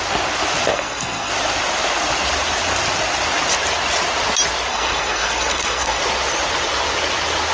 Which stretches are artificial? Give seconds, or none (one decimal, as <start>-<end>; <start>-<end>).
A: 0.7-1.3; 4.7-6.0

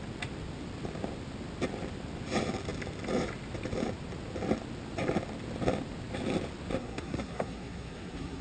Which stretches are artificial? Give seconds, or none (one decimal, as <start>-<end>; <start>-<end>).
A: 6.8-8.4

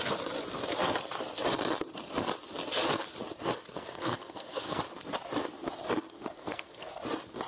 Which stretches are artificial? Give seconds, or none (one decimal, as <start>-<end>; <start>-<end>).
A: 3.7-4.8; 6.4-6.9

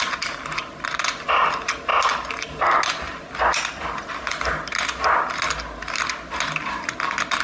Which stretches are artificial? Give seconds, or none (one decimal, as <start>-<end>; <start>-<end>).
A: none

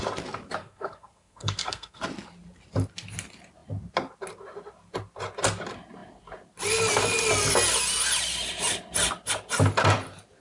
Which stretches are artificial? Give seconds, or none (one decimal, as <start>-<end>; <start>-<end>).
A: 0.6-2.0

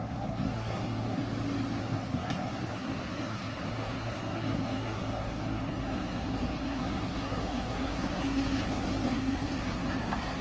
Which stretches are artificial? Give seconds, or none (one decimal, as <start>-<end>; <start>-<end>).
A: 0.0-1.2; 1.8-10.4

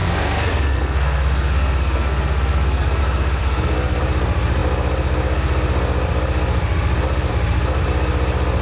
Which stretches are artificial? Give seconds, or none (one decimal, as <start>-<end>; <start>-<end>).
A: 0.0-3.0; 3.4-4.0